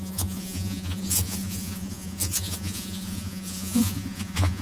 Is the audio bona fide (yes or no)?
no